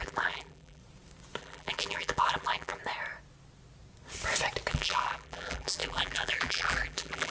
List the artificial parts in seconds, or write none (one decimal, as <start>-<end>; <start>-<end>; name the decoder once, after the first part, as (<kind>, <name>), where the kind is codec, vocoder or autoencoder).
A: 0.0-0.8 (vocoder, BigVGAN v2); 1.4-2.8; 4.7-7.3